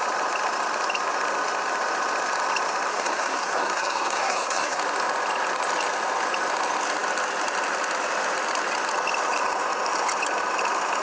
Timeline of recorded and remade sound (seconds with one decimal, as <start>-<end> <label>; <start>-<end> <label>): 0.0-2.9 recorded; 2.9-4.8 remade; 4.8-11.0 recorded